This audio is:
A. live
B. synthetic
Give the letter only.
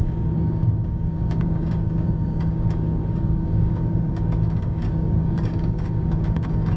B